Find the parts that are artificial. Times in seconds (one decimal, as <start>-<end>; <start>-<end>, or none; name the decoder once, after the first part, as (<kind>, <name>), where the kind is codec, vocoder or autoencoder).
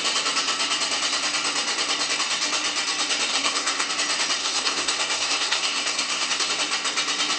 3.3-3.9 (codec, SNAC); 4.4-6.5